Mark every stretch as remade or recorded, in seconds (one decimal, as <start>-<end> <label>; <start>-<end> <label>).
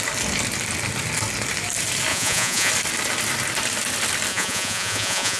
0.0-2.1 recorded; 2.1-2.7 remade; 2.7-4.3 recorded; 4.3-5.4 remade